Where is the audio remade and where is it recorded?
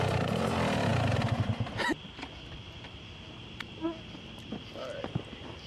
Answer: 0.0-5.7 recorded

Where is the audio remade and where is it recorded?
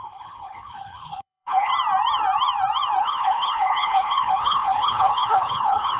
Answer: 0.0-1.7 remade; 1.7-3.0 recorded; 3.0-6.0 remade